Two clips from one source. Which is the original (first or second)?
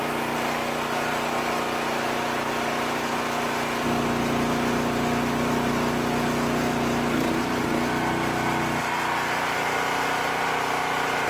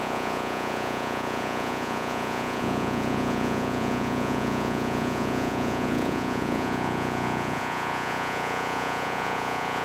first